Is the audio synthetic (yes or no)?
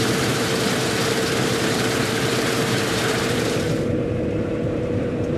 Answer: yes